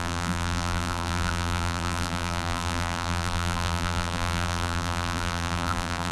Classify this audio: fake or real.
fake